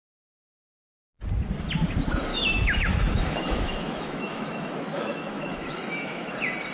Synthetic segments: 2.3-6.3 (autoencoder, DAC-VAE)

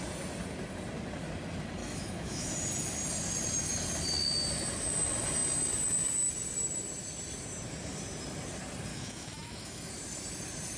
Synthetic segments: 1.8-2.5 (autoencoder, DAC-VAE); 8.9-9.9

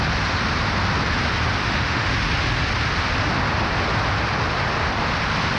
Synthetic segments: 1.6-2.3 (autoencoder, DAC-VAE)